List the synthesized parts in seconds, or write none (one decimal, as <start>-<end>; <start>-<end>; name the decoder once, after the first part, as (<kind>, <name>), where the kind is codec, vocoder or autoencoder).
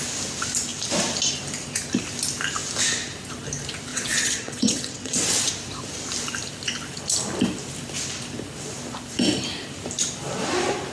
3.9-5.5 (vocoder, WaveNeXt)